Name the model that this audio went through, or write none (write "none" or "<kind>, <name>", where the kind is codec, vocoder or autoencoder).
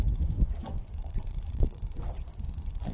vocoder, Vocos